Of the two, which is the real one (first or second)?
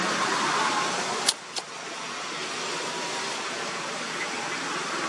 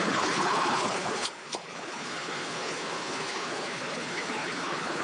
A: first